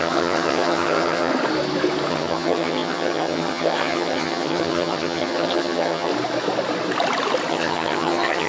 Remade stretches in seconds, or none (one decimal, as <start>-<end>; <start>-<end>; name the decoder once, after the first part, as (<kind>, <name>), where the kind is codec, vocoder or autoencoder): 0.0-1.3 (vocoder, HiFi-GAN); 2.1-6.1; 7.5-8.5